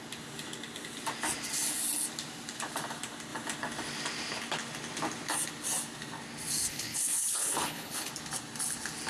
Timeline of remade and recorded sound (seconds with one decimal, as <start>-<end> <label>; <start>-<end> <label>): 0.0-6.7 recorded; 6.7-8.1 remade; 8.1-9.1 recorded